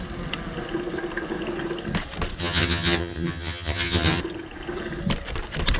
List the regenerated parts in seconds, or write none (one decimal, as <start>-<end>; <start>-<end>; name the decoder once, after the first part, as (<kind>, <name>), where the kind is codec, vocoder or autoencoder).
2.4-4.2 (vocoder, HiFi-GAN)